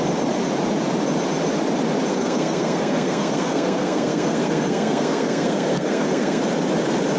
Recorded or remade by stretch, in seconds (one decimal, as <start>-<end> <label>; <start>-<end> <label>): 0.0-2.1 recorded; 2.1-6.4 remade; 6.4-7.2 recorded